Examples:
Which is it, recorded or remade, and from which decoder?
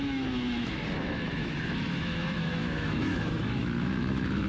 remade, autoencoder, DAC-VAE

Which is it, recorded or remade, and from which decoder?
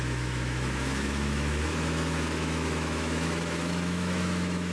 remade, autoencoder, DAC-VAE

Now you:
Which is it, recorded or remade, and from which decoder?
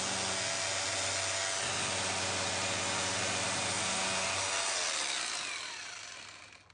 recorded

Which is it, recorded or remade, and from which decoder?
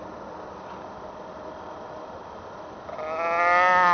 recorded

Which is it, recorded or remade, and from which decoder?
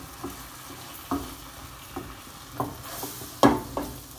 recorded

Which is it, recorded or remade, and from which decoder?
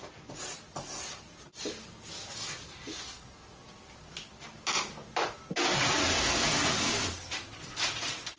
recorded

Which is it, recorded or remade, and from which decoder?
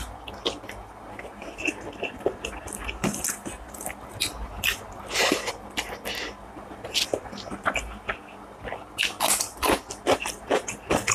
recorded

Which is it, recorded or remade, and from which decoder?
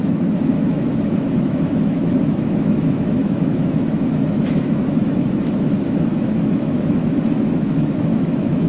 remade, autoencoder, DAC-VAE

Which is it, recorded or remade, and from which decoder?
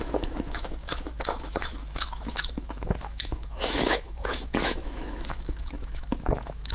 remade, autoencoder, DAC-VAE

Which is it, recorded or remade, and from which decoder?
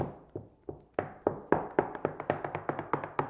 recorded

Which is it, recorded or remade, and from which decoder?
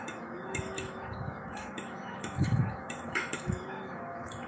remade, autoencoder, DAC-VAE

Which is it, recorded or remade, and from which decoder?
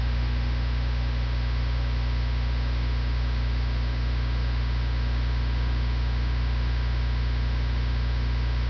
remade, autoencoder, DAC-VAE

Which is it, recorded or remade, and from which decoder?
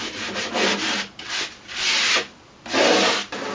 recorded